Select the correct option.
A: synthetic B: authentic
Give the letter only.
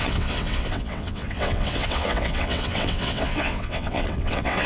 A